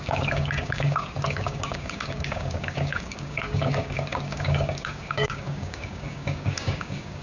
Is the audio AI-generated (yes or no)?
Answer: yes